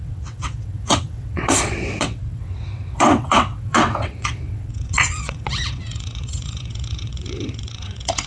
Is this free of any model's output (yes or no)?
no